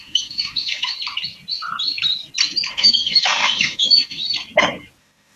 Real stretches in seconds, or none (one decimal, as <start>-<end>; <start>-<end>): 0.9-2.7; 4.2-5.0